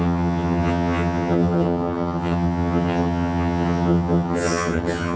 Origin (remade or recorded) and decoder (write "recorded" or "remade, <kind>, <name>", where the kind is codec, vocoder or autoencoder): remade, vocoder, HiFi-GAN